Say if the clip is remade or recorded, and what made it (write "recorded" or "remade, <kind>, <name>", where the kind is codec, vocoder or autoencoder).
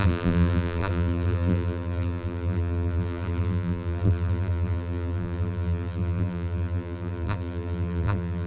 remade, vocoder, BigVGAN v2